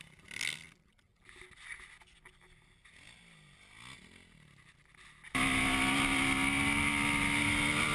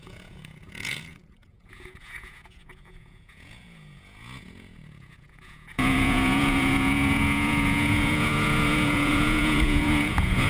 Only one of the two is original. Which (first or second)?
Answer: first